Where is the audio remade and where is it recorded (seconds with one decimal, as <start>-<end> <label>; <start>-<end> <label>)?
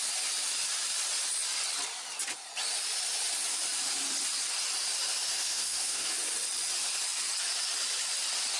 0.0-5.3 recorded; 5.3-6.1 remade; 6.1-8.6 recorded